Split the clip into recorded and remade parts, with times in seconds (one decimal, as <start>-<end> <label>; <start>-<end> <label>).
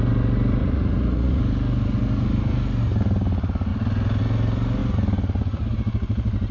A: 0.0-0.6 recorded; 0.6-1.4 remade; 1.4-6.5 recorded